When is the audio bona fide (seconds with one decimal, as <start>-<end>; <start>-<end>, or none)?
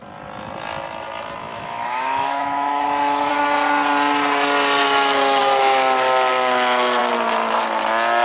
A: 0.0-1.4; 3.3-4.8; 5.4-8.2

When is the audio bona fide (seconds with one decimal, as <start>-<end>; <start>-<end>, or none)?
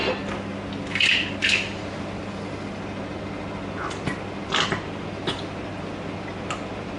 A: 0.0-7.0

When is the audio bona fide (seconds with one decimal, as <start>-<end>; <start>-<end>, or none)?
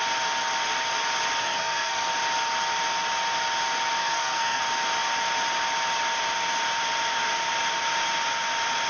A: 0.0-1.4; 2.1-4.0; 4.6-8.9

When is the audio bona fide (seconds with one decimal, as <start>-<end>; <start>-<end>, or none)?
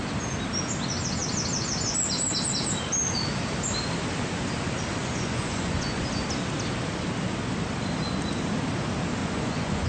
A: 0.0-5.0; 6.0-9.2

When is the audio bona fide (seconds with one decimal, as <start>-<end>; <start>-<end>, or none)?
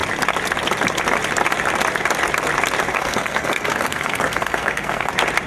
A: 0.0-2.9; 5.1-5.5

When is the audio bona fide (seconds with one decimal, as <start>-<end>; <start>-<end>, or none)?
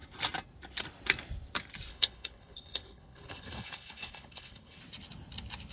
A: 0.0-1.9; 4.8-5.7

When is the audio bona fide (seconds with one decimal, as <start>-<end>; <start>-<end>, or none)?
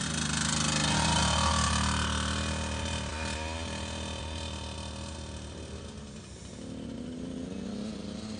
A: 0.0-8.4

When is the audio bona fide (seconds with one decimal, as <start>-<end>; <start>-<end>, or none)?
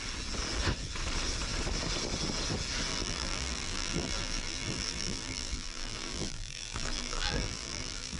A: 0.0-2.9